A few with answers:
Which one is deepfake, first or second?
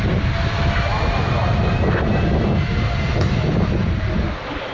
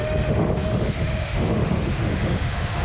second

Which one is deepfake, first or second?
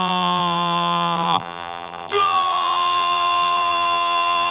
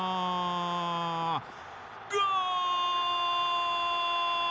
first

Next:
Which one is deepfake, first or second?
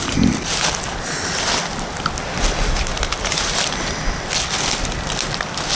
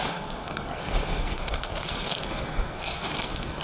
second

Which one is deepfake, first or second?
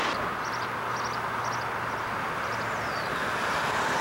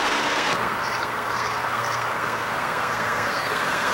second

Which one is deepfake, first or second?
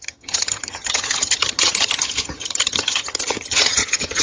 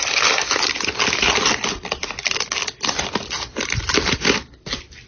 first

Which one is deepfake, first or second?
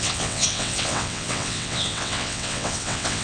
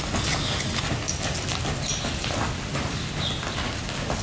first